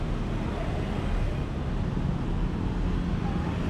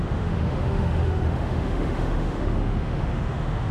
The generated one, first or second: second